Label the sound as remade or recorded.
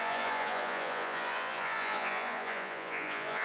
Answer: remade